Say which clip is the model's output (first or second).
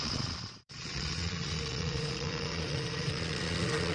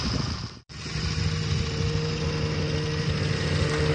first